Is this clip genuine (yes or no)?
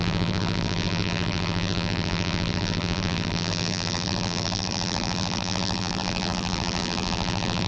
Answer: no